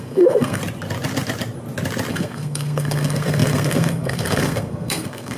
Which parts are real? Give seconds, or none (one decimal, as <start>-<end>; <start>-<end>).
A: 0.6-2.1